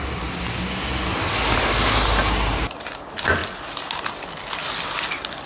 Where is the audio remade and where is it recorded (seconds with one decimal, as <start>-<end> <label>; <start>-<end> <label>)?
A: 0.0-5.5 recorded